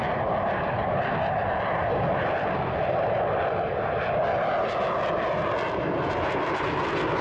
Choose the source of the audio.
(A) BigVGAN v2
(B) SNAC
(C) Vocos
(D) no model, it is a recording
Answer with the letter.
D